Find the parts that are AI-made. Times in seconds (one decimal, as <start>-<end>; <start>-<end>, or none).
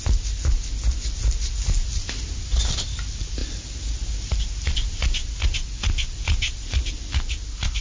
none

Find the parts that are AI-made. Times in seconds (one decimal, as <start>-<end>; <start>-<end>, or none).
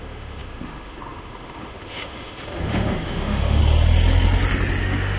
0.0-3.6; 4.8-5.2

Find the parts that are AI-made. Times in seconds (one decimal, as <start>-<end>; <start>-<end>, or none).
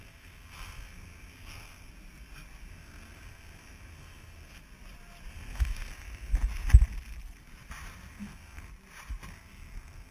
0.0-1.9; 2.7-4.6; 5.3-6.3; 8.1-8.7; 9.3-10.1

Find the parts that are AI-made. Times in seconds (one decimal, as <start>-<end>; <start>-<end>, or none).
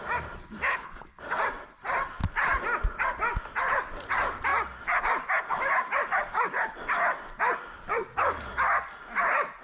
0.7-1.2